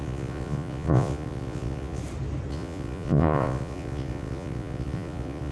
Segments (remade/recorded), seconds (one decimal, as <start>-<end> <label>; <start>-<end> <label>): 0.0-2.0 remade; 2.0-2.5 recorded; 2.5-5.5 remade